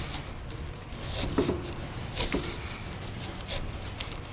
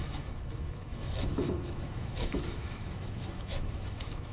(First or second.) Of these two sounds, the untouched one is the first